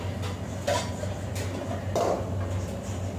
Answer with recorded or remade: recorded